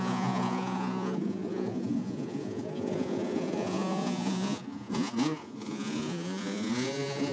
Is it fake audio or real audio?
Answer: fake